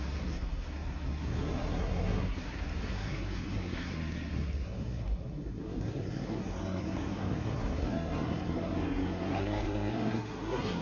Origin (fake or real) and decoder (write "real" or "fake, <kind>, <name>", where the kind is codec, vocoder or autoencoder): fake, codec, SNAC